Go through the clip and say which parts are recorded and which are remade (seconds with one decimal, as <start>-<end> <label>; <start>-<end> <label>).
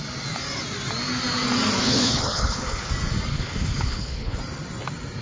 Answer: 0.0-1.8 recorded; 1.8-2.9 remade; 2.9-3.3 recorded; 3.3-4.4 remade; 4.4-5.2 recorded